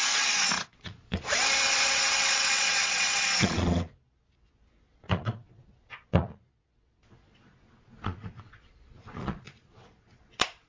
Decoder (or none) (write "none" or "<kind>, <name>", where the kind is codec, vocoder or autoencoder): vocoder, Vocos